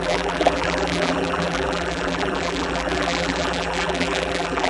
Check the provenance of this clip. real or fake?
fake